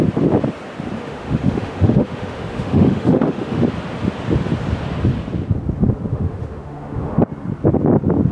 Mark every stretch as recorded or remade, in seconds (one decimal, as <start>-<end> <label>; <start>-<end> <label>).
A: 0.0-1.0 recorded; 1.0-3.6 remade; 3.6-6.1 recorded; 6.1-7.2 remade; 7.2-8.3 recorded